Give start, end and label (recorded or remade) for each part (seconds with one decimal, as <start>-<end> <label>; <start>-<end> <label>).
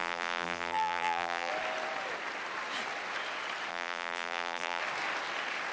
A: 0.0-1.5 remade; 1.5-3.7 recorded; 3.7-4.8 remade; 4.8-5.7 recorded